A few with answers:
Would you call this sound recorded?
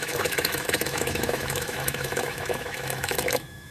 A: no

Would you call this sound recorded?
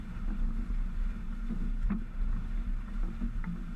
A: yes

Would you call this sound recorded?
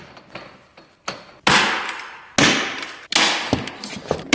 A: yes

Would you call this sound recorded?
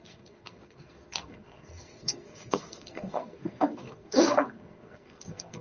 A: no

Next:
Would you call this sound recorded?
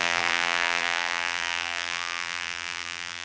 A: no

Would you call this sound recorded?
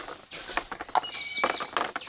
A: yes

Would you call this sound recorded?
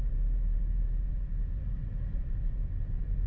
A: no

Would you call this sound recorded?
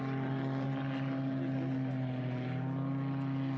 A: yes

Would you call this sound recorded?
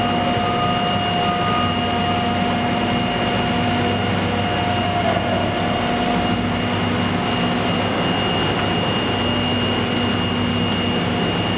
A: yes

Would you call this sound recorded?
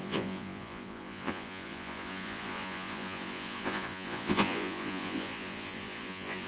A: no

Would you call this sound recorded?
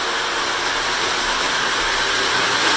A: yes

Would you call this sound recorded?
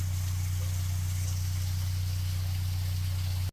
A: yes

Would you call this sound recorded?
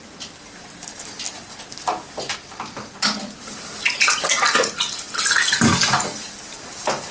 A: yes